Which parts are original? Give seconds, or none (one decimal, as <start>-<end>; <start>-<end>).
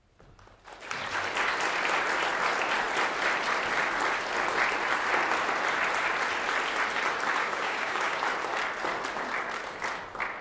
0.0-7.4; 8.2-10.4